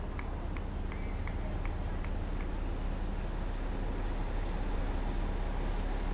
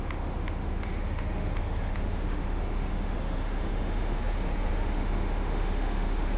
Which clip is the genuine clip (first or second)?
first